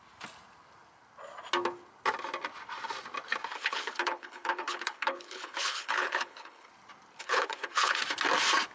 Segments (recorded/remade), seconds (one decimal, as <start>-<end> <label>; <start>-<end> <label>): 0.0-3.5 recorded; 3.5-6.7 remade; 6.7-7.2 recorded; 7.2-8.0 remade; 8.0-8.7 recorded